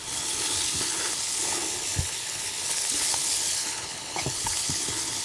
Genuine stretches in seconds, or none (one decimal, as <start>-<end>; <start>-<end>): none

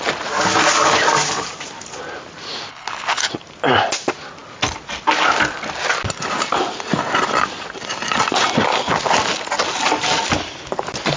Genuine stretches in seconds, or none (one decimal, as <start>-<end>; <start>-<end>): 0.0-2.7; 3.3-11.2

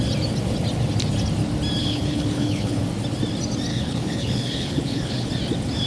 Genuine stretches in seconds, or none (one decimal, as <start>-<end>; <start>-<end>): 0.0-1.8; 2.8-3.7; 5.3-5.9

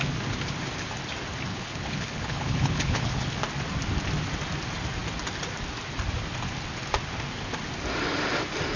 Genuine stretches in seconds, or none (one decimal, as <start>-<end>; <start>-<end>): 0.0-1.5; 3.3-8.8

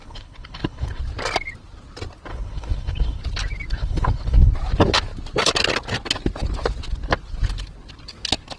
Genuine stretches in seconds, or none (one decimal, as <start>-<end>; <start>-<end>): 1.0-2.3; 3.2-3.7; 4.5-8.6